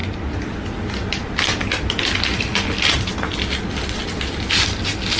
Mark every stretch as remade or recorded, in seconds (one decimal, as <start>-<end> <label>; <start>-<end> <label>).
0.0-5.2 recorded